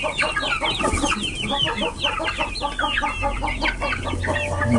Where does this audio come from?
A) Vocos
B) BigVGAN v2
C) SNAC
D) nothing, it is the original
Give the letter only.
D